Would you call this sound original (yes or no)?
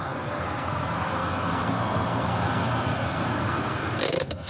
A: no